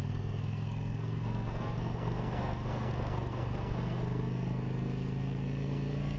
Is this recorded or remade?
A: remade